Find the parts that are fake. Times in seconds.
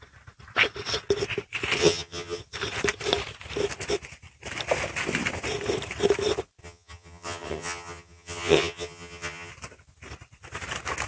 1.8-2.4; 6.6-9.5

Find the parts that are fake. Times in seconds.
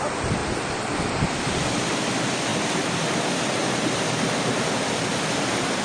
0.4-1.6; 2.5-4.0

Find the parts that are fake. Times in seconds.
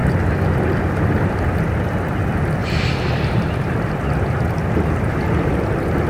2.6-3.9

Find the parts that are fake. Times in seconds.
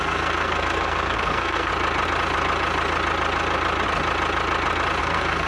0.0-1.7; 5.0-5.5